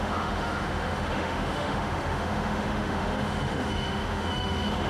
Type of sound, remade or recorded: remade